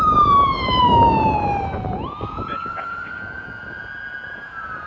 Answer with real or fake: fake